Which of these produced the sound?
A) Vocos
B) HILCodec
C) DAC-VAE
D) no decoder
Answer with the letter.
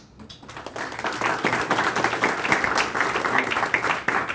D